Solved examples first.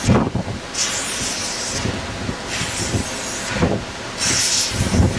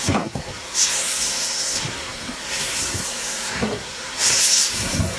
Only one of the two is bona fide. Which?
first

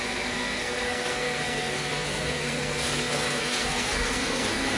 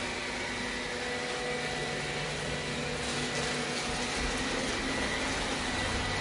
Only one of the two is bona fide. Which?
second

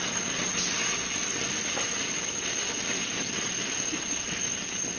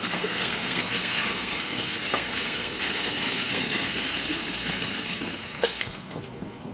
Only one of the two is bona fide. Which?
first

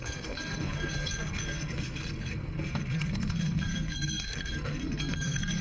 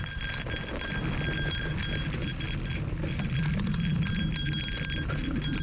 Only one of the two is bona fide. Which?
second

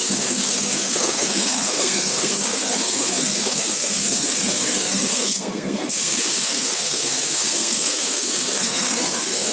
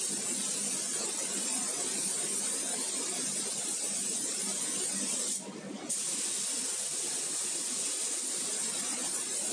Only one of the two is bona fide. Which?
second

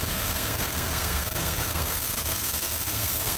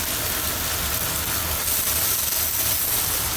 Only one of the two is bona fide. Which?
second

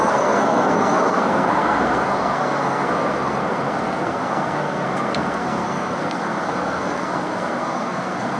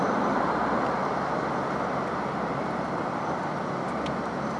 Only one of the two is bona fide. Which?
second